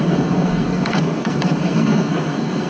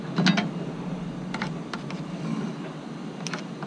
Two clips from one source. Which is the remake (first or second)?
first